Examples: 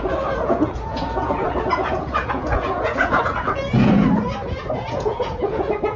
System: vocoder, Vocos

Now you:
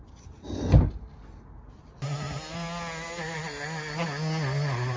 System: none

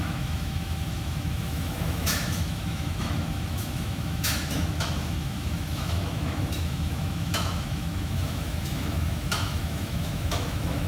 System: autoencoder, DAC-VAE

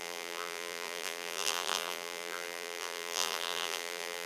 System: vocoder, BigVGAN v2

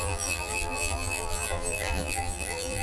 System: vocoder, BigVGAN v2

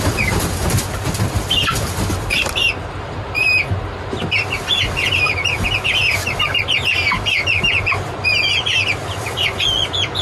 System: none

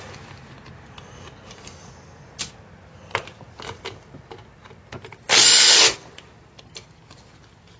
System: none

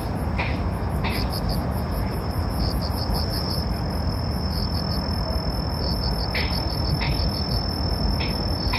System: none